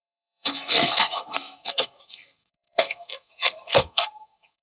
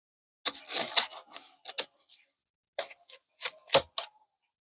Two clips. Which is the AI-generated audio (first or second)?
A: first